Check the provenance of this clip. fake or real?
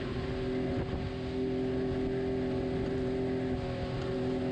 real